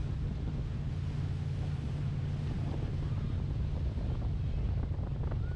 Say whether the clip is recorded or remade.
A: recorded